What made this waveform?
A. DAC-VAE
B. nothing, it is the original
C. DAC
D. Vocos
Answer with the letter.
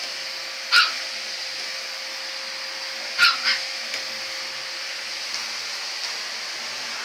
B